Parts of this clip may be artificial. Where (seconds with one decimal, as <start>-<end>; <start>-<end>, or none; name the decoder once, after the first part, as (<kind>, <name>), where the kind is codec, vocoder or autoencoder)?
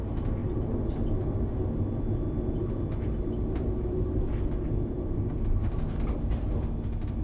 none